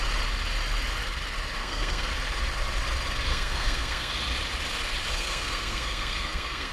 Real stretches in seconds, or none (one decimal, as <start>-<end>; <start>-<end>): 0.0-1.6; 2.1-3.3; 4.1-5.1